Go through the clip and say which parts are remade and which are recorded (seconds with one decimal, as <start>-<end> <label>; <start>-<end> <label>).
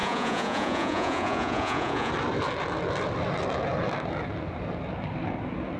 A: 0.0-2.1 remade; 2.1-5.8 recorded